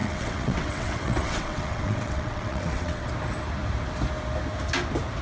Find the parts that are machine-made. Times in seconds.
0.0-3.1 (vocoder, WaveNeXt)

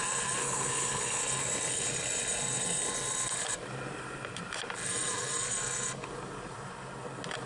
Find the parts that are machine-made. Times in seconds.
0.4-1.2 (codec, HILCodec)

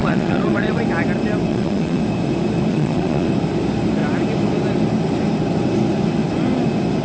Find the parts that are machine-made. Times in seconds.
0.0-0.8 (vocoder, Vocos); 1.5-2.0; 2.7-3.3

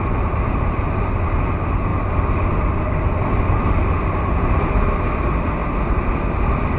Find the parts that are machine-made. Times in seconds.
none

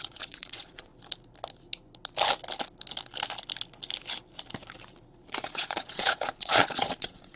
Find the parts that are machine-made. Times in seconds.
0.0-0.9 (vocoder, Vocos); 5.3-7.4

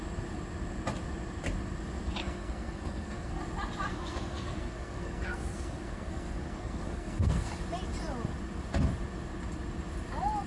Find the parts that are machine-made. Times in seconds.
2.2-3.4 (codec, SNAC); 3.9-7.5

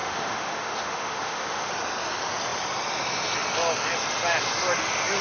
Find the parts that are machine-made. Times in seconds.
0.0-1.7 (autoencoder, DAC-VAE)